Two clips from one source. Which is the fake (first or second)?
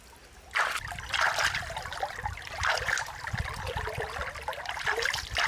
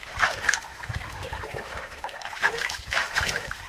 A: second